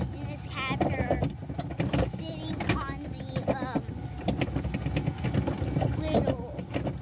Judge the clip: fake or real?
real